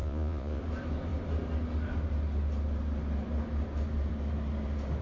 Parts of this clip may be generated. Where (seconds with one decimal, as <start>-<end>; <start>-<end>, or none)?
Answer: 0.0-0.6